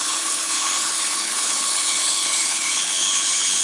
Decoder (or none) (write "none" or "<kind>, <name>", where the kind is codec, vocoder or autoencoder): codec, HILCodec